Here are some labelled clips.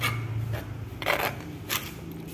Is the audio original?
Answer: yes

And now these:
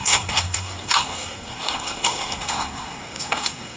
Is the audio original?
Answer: no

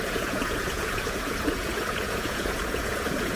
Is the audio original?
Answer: no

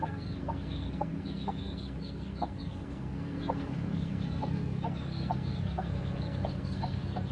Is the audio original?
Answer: no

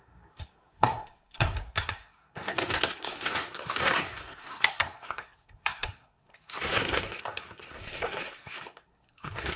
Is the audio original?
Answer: no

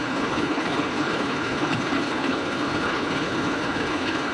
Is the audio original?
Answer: no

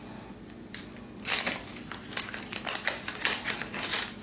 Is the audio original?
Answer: yes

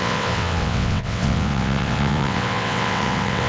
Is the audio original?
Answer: no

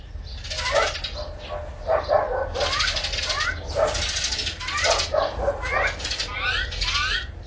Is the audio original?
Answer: yes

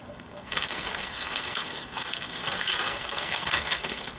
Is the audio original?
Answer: no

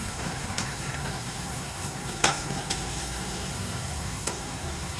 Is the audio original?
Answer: no